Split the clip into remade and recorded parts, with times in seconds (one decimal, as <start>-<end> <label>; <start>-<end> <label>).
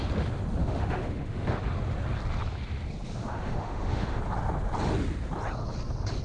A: 0.0-0.6 recorded; 0.6-1.6 remade; 1.6-3.2 recorded; 3.2-4.2 remade; 4.2-6.2 recorded